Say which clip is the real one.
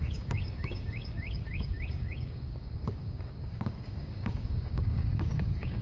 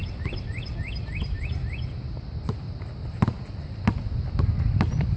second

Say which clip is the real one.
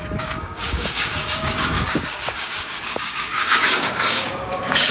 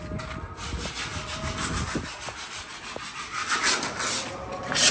second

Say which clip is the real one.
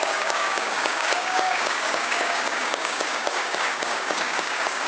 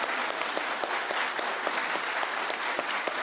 second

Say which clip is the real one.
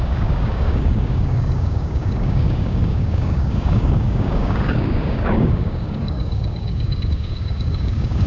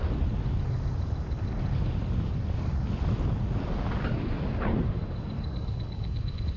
second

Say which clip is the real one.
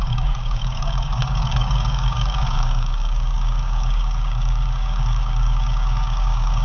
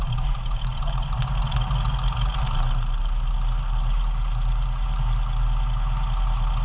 second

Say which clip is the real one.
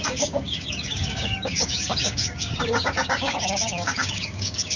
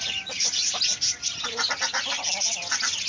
second